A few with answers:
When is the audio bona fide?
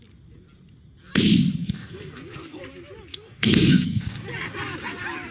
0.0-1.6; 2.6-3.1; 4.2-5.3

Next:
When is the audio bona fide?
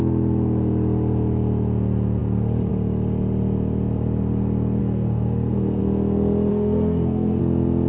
0.0-4.8; 5.8-6.5; 7.4-7.9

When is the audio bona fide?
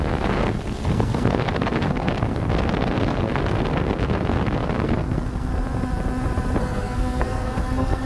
5.5-6.6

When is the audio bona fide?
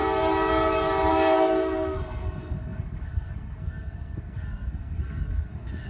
0.0-1.1